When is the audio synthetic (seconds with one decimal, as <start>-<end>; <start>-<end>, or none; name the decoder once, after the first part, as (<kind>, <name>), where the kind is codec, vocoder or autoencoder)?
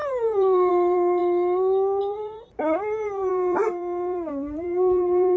0.0-1.2 (vocoder, BigVGAN v2); 2.0-5.4